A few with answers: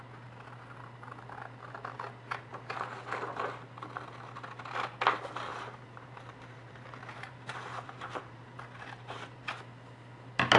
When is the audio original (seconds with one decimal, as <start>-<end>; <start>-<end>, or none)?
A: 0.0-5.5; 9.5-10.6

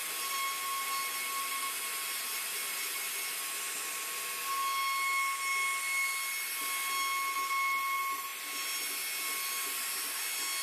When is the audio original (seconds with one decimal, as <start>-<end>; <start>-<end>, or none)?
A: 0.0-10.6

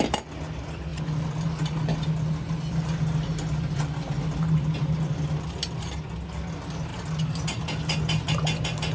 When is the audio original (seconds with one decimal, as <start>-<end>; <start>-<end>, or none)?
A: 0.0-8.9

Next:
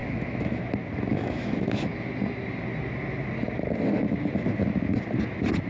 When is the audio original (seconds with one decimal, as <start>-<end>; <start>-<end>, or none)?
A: 0.6-1.1; 1.9-5.7

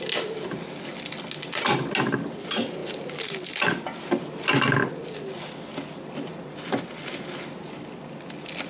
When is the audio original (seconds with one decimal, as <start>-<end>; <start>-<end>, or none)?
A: 0.0-8.7

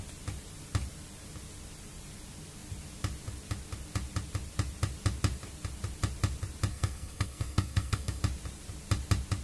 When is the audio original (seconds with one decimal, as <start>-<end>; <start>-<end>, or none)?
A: 0.0-6.7; 8.2-9.4

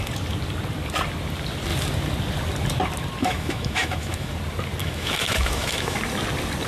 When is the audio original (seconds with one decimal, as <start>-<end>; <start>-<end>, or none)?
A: 0.0-3.2; 4.3-4.8; 6.0-6.7

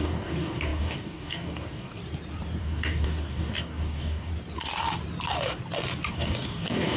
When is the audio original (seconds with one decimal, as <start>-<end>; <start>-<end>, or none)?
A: 2.0-2.6; 4.3-6.1